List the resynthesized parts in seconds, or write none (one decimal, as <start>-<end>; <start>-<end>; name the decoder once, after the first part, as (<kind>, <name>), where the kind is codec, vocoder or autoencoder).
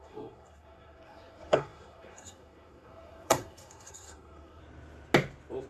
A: 0.0-4.6 (codec, SNAC)